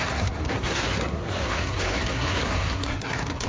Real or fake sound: fake